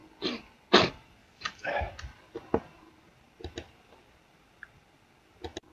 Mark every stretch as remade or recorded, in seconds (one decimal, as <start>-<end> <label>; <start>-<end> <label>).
0.0-1.2 recorded; 1.2-1.8 remade; 1.8-5.7 recorded